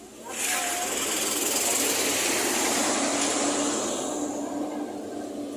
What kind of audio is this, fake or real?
real